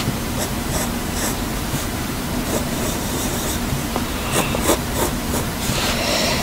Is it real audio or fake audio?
fake